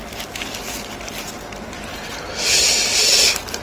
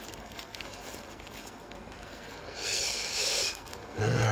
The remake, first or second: second